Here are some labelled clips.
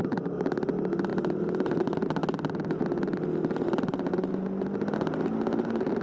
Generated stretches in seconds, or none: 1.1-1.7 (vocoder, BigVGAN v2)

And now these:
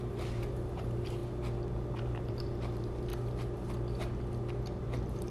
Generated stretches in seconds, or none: 0.0-1.2 (vocoder, BigVGAN v2); 2.0-3.1; 4.8-5.3

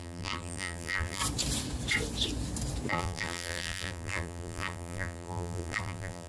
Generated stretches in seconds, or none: 0.0-1.2 (vocoder, BigVGAN v2); 2.9-6.3

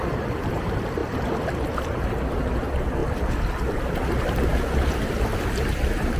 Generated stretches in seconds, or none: 0.0-1.0 (vocoder, BigVGAN v2); 2.0-3.0; 4.9-6.2